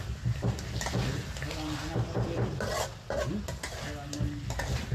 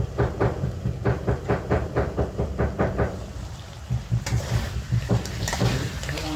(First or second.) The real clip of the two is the first